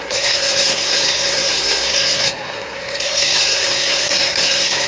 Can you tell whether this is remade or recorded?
remade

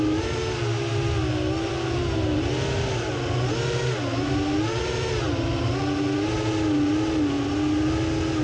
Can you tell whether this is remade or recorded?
recorded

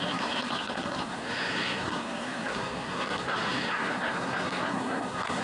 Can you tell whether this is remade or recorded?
remade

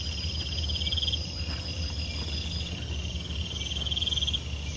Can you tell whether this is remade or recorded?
recorded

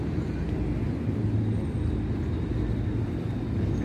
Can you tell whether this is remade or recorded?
recorded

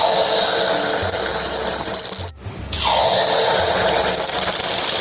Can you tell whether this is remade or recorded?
recorded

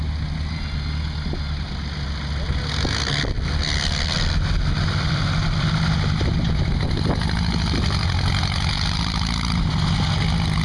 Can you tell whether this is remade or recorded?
recorded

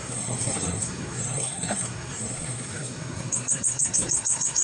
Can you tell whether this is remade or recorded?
remade